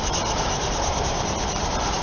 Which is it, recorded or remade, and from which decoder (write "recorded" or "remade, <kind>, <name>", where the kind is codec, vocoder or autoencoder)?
recorded